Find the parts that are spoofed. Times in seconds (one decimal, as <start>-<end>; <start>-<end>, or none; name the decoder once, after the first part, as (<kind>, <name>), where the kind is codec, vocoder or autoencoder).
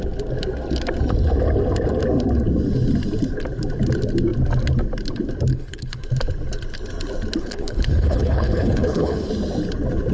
5.5-6.1 (codec, HILCodec); 7.4-9.3